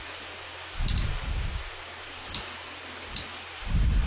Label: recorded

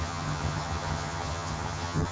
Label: remade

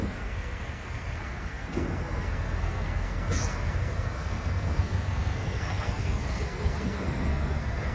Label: remade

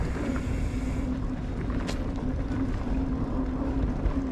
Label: recorded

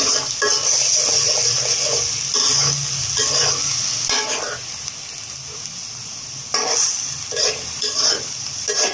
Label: recorded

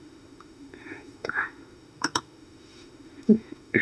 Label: remade